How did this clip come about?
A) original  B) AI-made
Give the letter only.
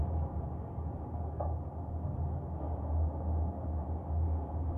A